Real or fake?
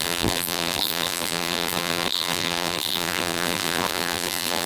fake